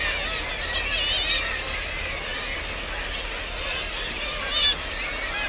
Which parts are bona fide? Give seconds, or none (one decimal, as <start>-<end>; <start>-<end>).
0.0-5.5